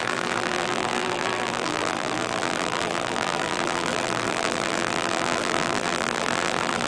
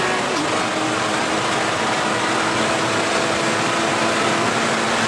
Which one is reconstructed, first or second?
first